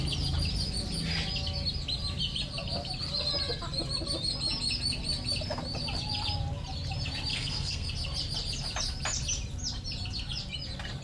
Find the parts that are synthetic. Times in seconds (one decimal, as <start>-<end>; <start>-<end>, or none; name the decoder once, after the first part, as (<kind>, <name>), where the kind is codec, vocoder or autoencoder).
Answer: 7.3-7.9 (codec, SNAC)